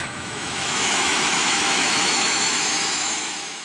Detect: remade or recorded remade